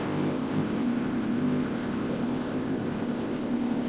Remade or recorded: remade